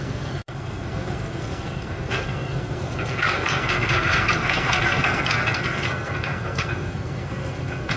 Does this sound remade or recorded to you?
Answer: remade